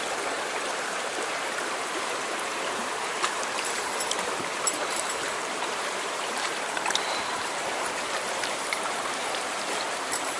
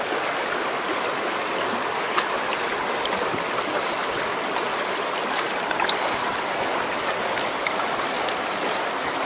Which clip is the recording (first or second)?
second